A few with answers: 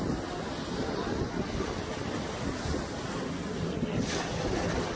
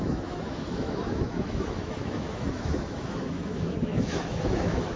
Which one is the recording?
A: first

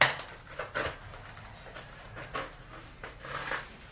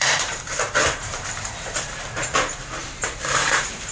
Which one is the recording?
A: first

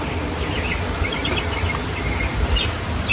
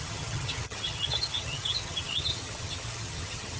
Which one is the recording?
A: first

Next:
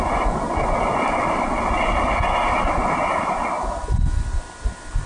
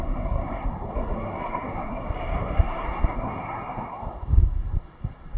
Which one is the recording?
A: first